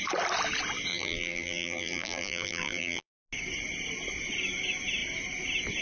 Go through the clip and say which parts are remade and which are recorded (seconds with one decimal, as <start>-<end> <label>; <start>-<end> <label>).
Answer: 0.0-0.9 recorded; 0.9-3.1 remade; 3.1-5.8 recorded

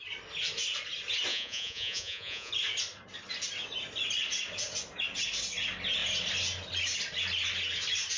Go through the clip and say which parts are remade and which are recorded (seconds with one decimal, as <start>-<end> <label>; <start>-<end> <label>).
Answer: 0.0-1.3 recorded; 1.3-2.5 remade; 2.5-8.2 recorded

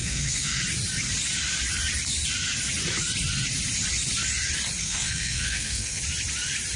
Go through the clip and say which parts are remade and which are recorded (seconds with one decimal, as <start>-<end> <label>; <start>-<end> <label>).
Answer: 0.0-0.6 remade; 0.6-4.8 recorded; 4.8-6.0 remade; 6.0-6.8 recorded

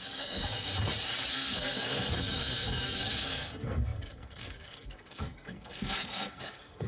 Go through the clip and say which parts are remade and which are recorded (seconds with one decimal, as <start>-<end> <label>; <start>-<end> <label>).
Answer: 0.0-0.7 remade; 0.7-1.3 recorded; 1.3-6.9 remade

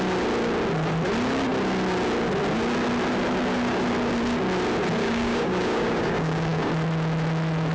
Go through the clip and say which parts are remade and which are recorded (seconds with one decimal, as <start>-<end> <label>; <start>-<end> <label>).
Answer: 0.0-5.0 recorded; 5.0-6.7 remade; 6.7-7.7 recorded